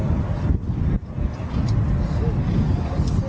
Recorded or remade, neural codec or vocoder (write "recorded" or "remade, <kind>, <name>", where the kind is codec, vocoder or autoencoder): recorded